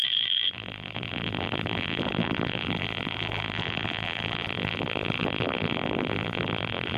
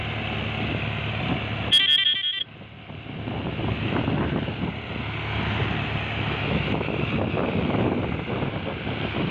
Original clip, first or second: second